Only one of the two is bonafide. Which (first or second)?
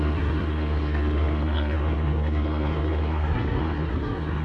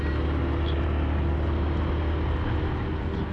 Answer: second